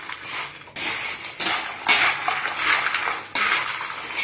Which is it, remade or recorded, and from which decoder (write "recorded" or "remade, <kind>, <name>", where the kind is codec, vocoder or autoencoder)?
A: recorded